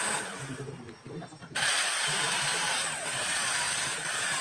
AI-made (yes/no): yes